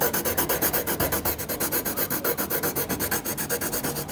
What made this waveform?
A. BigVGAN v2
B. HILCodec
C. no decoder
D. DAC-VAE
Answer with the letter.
C